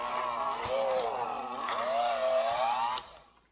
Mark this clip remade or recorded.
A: recorded